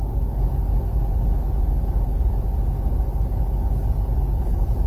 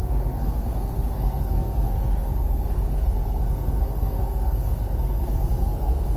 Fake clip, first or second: second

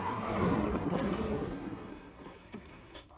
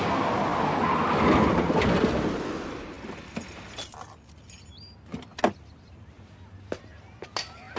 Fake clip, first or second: first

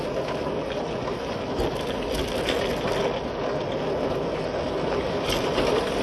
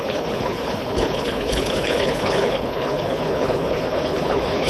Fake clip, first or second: second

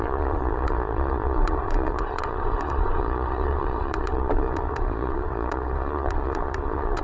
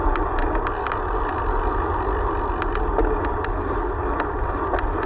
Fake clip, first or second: first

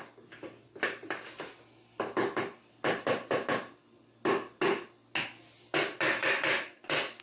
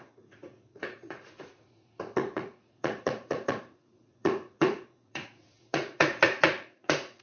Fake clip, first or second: second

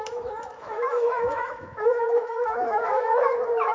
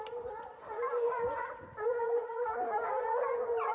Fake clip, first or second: first